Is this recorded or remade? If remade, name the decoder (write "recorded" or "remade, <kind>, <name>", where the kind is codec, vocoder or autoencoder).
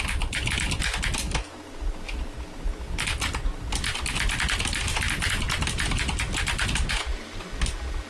recorded